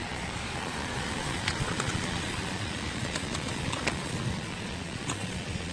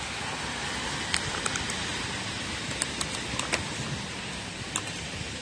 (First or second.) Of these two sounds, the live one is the second